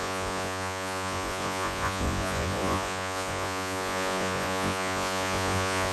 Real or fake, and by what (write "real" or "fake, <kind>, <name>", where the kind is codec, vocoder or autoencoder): fake, vocoder, Vocos